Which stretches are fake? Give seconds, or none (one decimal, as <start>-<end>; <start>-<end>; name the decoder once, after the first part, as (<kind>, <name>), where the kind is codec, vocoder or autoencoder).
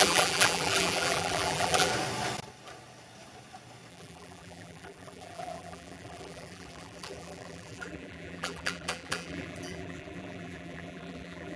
0.0-1.9 (vocoder, BigVGAN v2); 3.9-11.6